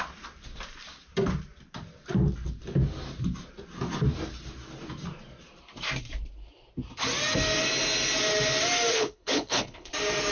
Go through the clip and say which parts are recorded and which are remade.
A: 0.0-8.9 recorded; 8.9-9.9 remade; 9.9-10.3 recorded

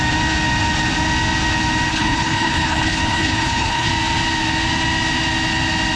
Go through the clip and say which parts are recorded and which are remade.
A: 0.0-1.9 recorded; 1.9-3.9 remade; 3.9-6.0 recorded